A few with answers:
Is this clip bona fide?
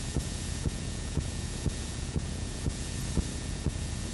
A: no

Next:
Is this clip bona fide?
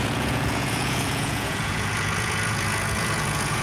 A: no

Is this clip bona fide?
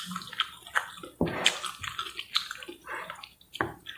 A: yes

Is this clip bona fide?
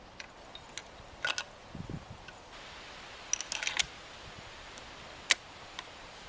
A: yes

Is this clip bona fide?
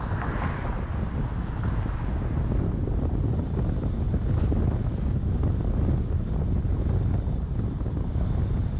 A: yes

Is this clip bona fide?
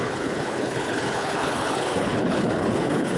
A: no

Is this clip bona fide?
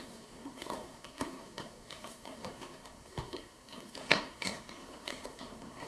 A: no